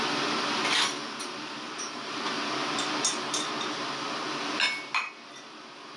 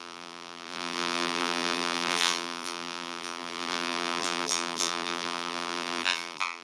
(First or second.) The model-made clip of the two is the second